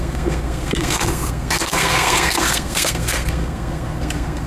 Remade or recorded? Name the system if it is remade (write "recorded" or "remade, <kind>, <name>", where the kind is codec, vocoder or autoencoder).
remade, codec, SNAC